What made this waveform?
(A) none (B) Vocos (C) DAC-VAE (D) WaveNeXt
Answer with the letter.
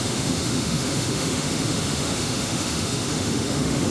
C